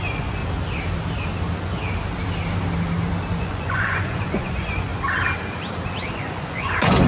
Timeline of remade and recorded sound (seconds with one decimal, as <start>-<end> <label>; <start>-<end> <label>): 0.0-0.4 remade; 0.4-3.4 recorded; 3.4-4.9 remade; 4.9-6.1 recorded; 6.1-7.1 remade